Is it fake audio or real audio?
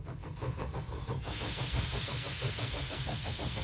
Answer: fake